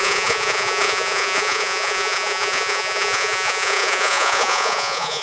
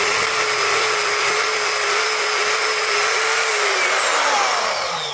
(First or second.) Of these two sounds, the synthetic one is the first